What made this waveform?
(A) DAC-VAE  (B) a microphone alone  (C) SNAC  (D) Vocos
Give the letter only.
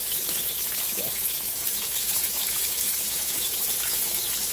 A